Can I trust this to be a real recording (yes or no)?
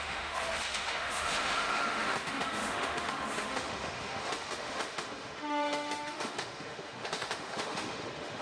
no